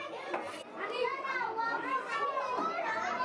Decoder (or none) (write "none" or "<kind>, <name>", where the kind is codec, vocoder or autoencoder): none